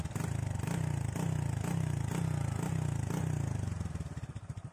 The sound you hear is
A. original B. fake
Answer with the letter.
A